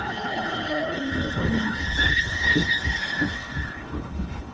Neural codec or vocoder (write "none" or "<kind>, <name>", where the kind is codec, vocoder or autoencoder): codec, HILCodec